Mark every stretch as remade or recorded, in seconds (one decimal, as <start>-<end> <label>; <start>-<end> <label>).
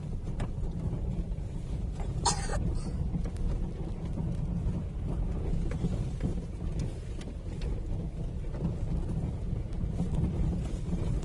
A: 0.0-2.5 remade; 2.5-5.7 recorded; 5.7-6.3 remade; 6.3-10.3 recorded; 10.3-11.2 remade